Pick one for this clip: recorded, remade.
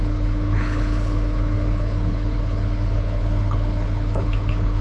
remade